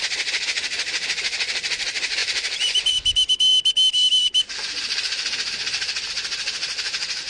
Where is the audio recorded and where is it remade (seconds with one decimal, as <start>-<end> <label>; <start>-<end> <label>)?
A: 0.0-2.2 recorded; 2.2-2.9 remade; 2.9-7.3 recorded